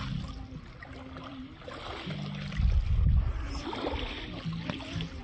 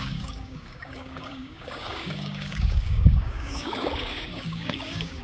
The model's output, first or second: second